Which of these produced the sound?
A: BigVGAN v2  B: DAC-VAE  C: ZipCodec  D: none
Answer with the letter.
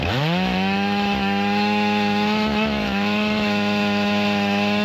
B